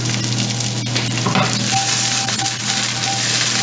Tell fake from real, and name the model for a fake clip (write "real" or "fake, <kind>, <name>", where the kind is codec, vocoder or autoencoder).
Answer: real